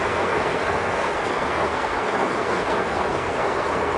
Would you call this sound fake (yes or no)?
yes